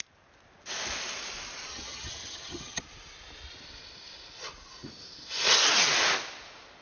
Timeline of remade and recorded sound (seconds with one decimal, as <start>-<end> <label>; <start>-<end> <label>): 0.0-1.7 recorded; 1.7-2.8 remade; 2.8-6.8 recorded